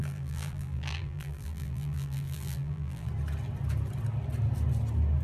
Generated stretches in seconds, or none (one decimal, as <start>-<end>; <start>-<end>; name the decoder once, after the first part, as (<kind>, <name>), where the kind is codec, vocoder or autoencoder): 0.0-3.1 (vocoder, BigVGAN v2)